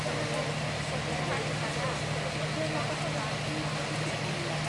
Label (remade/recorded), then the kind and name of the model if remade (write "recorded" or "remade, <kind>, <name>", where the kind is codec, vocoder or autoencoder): recorded